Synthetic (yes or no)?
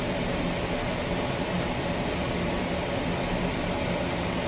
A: no